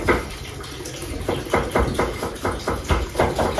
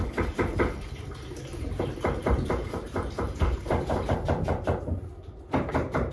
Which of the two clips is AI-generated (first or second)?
second